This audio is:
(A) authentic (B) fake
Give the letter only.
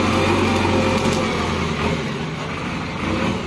A